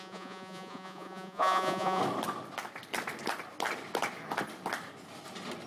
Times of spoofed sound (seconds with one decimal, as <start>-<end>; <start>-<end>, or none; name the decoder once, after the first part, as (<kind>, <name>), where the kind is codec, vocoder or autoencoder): 0.0-2.0 (vocoder, Vocos)